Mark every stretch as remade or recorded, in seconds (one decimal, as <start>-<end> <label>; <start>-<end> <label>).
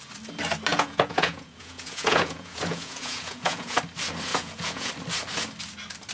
0.0-0.7 recorded; 0.7-3.8 remade; 3.8-4.3 recorded; 4.3-4.9 remade; 4.9-6.1 recorded